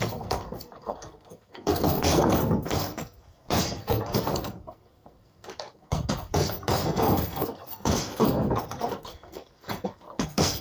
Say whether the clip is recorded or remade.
remade